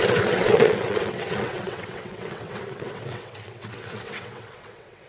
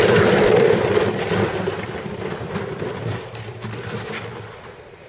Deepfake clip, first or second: first